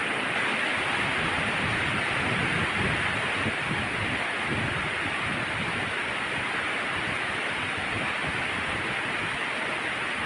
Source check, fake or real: fake